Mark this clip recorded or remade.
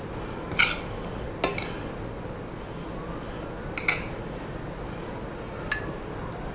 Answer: recorded